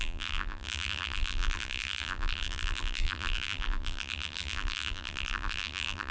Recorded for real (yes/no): no